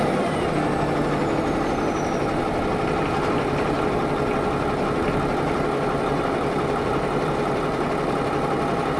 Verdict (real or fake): real